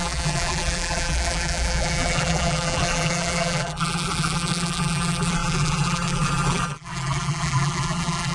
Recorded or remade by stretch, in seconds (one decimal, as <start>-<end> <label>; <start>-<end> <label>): 0.0-8.3 remade